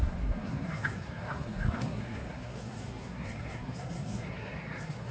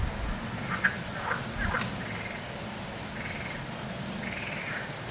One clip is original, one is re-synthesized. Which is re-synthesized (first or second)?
first